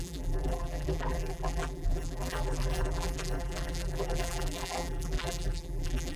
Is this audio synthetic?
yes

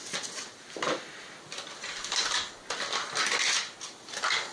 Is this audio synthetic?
no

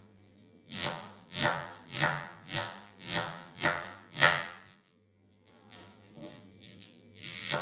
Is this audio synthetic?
yes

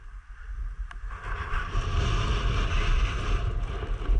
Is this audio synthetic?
no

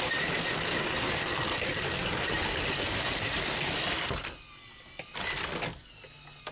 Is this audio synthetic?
no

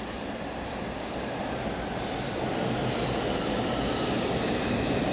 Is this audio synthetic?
no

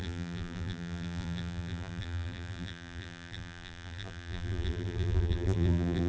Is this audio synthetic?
yes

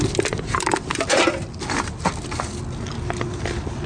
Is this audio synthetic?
no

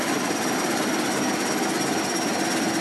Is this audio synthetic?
no